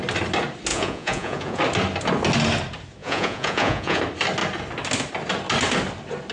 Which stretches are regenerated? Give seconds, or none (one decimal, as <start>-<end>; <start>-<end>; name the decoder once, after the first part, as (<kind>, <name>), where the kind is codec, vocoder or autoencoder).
0.7-1.6 (vocoder, Vocos); 3.0-4.0